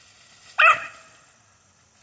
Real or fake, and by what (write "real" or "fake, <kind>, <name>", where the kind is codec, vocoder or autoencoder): real